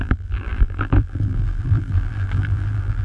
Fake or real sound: fake